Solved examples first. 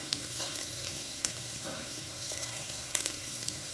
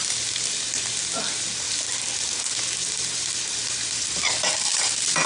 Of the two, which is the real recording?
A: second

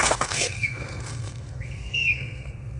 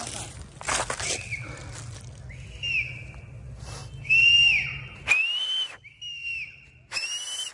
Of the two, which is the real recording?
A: second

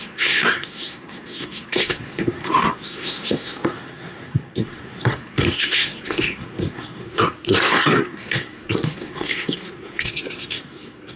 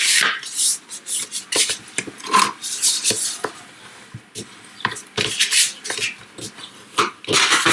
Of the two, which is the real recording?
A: second